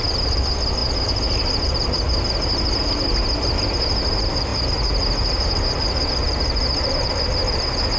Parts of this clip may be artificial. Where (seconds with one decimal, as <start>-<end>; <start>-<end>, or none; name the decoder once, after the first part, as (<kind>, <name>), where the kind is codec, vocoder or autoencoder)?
none